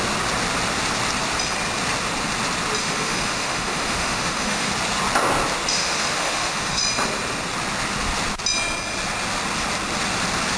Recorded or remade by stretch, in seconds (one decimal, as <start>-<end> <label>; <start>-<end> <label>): 0.0-2.8 recorded; 2.8-4.7 remade; 4.7-5.7 recorded; 5.7-6.8 remade; 6.8-10.6 recorded